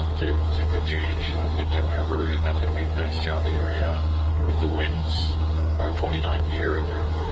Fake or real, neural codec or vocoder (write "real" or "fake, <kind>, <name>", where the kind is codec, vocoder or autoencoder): fake, codec, SNAC